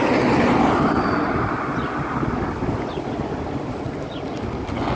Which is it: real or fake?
real